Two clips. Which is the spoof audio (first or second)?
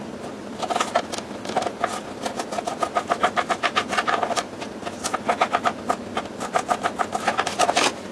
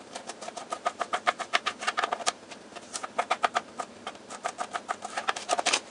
second